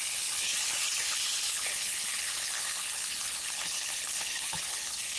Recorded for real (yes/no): no